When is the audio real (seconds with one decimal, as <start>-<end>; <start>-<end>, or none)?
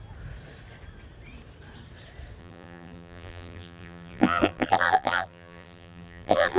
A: 0.0-2.4